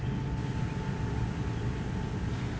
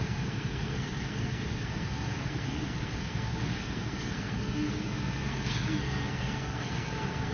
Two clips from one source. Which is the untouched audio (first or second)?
first